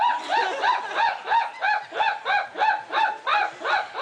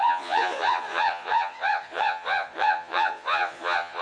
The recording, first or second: first